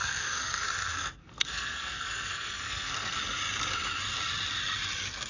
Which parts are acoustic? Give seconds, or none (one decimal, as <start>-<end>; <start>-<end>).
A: 3.2-5.3